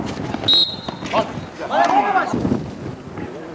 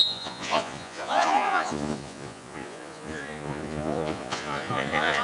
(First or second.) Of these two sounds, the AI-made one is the second